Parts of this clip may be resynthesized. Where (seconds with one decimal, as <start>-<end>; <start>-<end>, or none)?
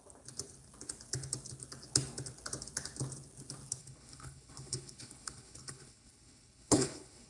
3.8-7.3